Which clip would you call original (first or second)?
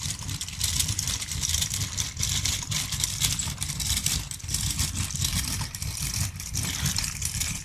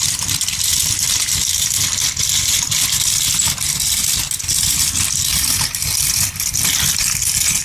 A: second